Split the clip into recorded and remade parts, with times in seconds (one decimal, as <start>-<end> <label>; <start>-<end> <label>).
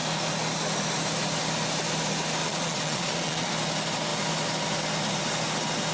0.0-2.4 recorded; 2.4-3.5 remade; 3.5-5.9 recorded